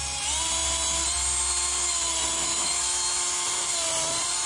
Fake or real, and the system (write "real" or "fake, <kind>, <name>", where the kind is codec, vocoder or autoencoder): real